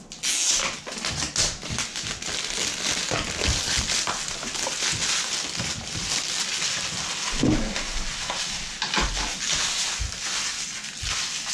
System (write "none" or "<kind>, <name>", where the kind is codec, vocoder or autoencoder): none